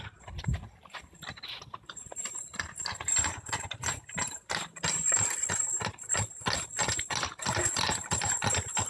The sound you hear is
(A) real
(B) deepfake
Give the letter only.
A